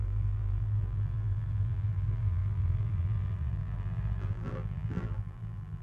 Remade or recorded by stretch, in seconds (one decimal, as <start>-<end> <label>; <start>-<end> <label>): 0.0-5.8 remade